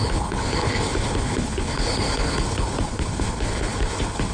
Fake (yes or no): yes